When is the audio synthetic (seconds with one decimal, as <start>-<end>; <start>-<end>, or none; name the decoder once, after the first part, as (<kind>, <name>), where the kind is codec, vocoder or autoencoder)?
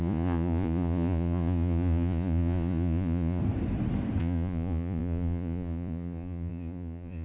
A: 0.0-3.4 (vocoder, Vocos); 4.2-7.2